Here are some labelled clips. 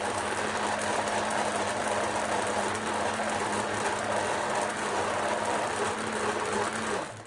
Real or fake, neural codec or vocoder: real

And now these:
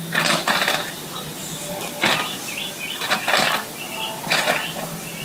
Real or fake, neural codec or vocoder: real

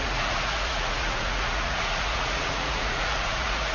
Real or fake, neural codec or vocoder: fake, vocoder, Vocos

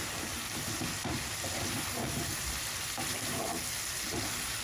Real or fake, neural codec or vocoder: fake, vocoder, BigVGAN v2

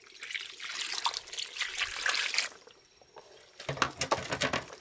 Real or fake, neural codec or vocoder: real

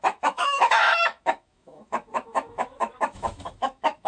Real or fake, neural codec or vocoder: fake, autoencoder, DAC-VAE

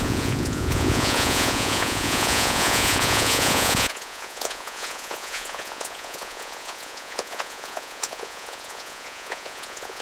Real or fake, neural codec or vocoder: fake, vocoder, Vocos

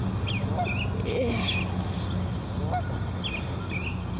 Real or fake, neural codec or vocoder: real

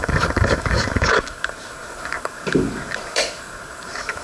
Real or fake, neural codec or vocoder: fake, codec, DAC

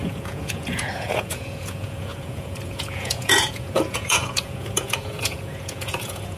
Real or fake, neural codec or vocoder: fake, vocoder, Vocos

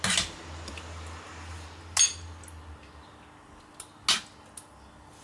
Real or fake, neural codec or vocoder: real